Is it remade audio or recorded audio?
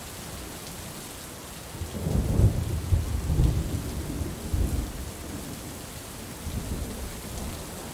recorded